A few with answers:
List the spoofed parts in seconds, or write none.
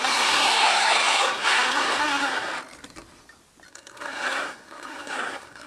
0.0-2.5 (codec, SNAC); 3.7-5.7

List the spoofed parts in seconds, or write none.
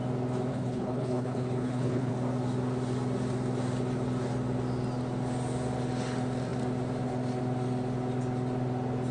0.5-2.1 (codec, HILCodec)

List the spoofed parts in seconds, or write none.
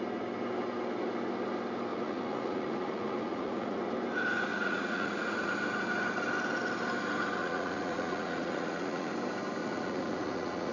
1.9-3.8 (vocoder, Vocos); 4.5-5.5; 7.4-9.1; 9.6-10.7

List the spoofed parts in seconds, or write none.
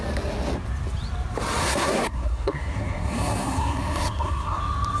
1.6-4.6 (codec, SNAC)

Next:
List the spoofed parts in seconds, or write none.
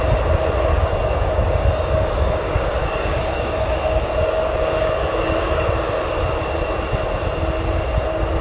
0.7-5.7 (codec, DAC)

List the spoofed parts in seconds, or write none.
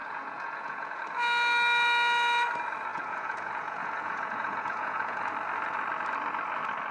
0.0-1.0 (vocoder, Vocos); 2.9-5.3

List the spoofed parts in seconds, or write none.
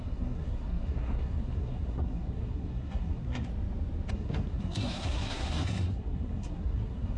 0.0-3.5 (codec, SNAC); 4.1-7.2